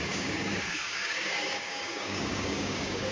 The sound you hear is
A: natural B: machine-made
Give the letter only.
B